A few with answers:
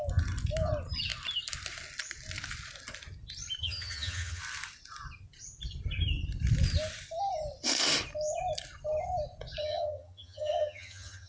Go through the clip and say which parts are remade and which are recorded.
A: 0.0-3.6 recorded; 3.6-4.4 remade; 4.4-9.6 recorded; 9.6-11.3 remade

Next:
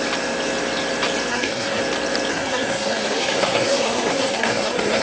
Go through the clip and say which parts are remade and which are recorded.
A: 0.0-1.3 recorded; 1.3-1.8 remade; 1.8-2.3 recorded; 2.3-5.0 remade

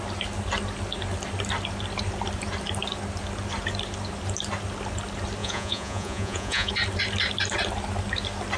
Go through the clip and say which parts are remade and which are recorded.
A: 0.0-5.4 recorded; 5.4-6.7 remade; 6.7-8.6 recorded

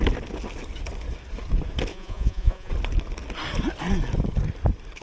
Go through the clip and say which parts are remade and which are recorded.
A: 0.0-1.9 recorded; 1.9-2.7 remade; 2.7-5.0 recorded

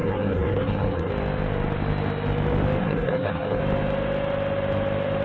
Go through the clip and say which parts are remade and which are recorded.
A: 0.0-1.1 remade; 1.1-2.8 recorded; 2.8-3.6 remade; 3.6-5.2 recorded